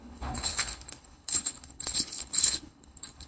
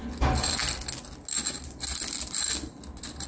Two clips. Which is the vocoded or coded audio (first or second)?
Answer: first